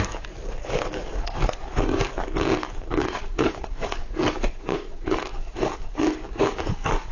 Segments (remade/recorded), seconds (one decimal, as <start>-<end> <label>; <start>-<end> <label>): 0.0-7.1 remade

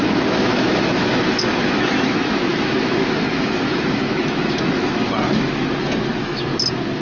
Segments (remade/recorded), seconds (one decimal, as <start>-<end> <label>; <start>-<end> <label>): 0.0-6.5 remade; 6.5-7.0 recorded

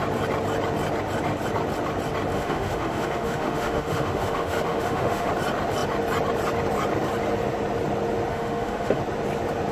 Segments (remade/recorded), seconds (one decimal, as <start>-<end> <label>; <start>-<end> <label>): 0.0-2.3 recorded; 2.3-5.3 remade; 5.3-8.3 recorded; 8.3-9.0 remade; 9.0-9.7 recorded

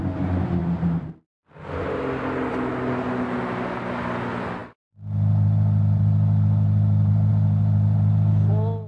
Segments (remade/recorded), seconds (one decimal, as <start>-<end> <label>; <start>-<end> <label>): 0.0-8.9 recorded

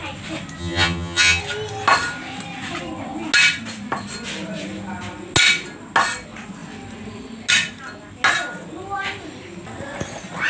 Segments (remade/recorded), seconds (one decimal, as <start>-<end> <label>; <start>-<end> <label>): 0.0-0.6 recorded; 0.6-1.4 remade; 1.4-10.5 recorded

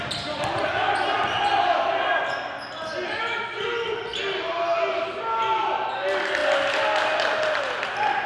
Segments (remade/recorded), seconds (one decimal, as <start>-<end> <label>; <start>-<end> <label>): 0.0-8.3 recorded

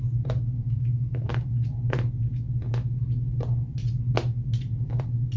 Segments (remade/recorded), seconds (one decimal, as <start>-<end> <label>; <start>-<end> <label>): 0.0-0.6 recorded; 0.6-1.3 remade; 1.3-5.4 recorded

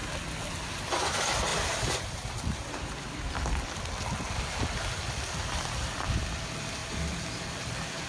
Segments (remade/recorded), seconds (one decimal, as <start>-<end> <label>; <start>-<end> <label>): 0.0-1.5 recorded; 1.5-3.3 remade; 3.3-6.8 recorded; 6.8-8.1 remade